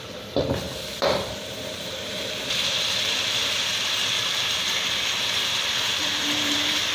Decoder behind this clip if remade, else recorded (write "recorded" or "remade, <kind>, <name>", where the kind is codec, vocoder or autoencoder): remade, vocoder, BigVGAN v2